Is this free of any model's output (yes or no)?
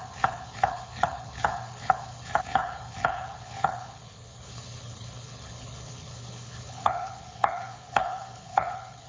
no